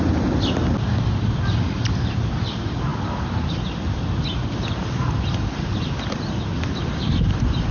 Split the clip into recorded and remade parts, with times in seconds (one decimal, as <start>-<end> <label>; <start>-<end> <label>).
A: 0.0-7.7 recorded